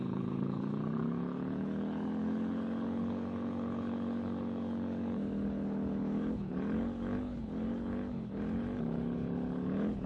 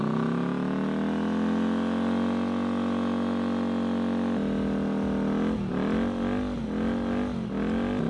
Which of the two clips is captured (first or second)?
second